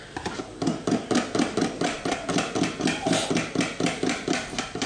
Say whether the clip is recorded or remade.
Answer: recorded